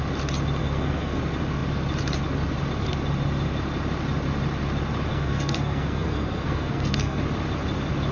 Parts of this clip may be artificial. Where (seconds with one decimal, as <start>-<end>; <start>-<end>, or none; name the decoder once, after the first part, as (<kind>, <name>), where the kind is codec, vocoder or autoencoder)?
0.6-1.2 (codec, SNAC); 5.1-7.2